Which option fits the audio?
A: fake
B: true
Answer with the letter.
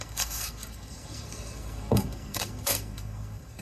A